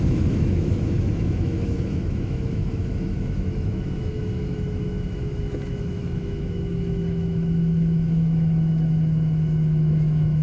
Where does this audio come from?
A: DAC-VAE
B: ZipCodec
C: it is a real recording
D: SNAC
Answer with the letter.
A